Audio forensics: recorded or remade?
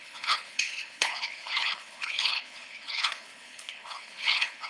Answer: remade